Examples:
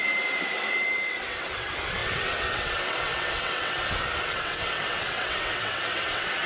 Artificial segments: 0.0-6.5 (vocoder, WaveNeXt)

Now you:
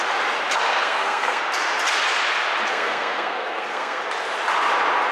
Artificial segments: 0.7-1.4 (codec, SNAC); 2.7-4.0

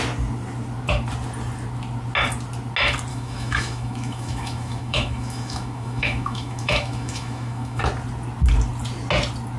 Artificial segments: 3.1-7.8 (autoencoder, DAC-VAE)

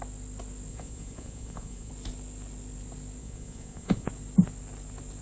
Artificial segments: 0.7-1.9 (vocoder, Vocos); 3.2-4.1

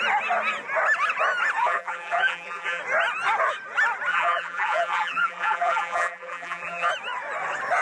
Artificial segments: 1.6-2.8 (vocoder, BigVGAN v2); 4.1-6.9

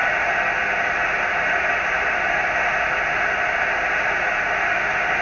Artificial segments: none

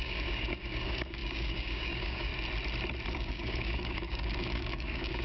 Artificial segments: 0.0-2.3 (codec, DAC); 3.1-5.2